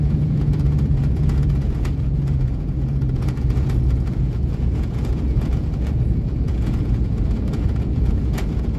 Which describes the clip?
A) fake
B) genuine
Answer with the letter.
A